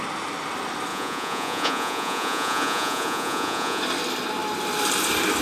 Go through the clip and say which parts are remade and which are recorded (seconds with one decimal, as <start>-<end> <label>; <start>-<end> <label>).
0.0-0.9 recorded; 0.9-3.8 remade; 3.8-5.4 recorded